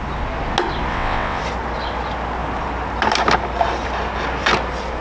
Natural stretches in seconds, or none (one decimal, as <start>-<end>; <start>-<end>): 0.0-0.9; 1.4-5.0